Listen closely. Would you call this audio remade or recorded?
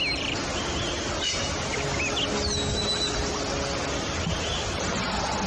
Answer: recorded